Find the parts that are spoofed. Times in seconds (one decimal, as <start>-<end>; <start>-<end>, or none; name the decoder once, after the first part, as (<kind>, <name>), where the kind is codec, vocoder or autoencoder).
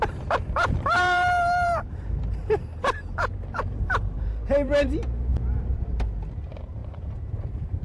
0.0-5.3 (vocoder, BigVGAN v2); 6.3-7.8